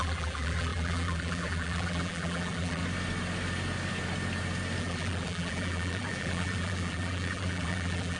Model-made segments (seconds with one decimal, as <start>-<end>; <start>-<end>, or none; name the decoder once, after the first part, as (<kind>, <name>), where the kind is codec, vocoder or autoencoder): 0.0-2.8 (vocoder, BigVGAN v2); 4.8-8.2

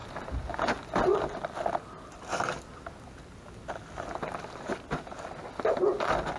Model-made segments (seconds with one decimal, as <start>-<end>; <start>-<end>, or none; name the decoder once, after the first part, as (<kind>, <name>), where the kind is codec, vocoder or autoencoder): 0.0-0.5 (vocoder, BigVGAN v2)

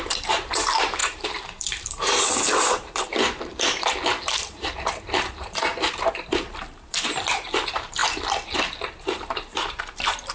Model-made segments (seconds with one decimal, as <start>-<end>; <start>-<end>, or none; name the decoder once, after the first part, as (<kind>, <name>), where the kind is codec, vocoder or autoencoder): 0.0-8.0 (vocoder, BigVGAN v2); 9.0-10.3

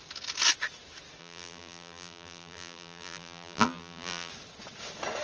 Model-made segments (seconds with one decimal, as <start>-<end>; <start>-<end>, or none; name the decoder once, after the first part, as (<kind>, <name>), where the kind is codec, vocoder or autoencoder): 1.2-4.3 (vocoder, BigVGAN v2)

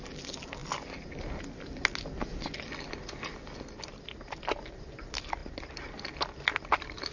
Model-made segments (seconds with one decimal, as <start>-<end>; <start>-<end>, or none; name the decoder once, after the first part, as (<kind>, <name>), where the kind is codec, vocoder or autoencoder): none

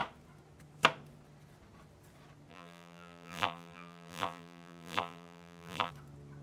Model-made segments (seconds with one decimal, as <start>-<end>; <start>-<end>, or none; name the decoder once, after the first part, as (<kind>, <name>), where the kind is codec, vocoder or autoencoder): 2.5-5.9 (vocoder, BigVGAN v2)

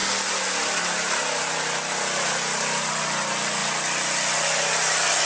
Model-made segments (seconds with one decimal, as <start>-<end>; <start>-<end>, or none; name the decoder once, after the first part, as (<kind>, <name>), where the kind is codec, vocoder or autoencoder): none

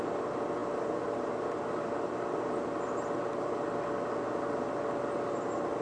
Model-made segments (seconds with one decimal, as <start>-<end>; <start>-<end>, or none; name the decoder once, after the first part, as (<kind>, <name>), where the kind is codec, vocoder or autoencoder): none